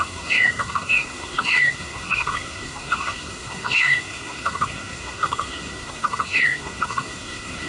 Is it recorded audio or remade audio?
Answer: remade